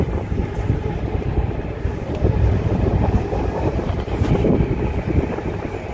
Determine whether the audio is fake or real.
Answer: fake